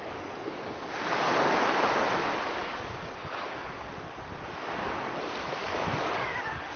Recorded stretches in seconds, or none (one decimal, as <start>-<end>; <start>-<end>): 0.9-2.6; 3.9-5.6